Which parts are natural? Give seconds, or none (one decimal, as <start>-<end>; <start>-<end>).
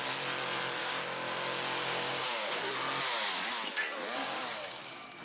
0.0-0.8; 2.6-4.2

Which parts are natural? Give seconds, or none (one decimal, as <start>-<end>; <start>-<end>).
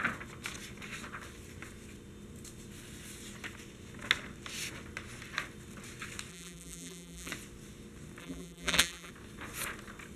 0.0-6.3; 7.3-8.2; 9.1-10.2